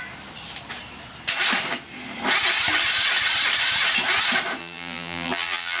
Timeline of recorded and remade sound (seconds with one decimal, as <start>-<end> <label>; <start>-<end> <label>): 0.0-4.6 recorded; 4.6-5.8 remade